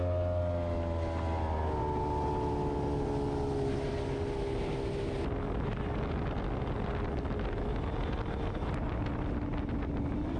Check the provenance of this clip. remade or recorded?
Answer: recorded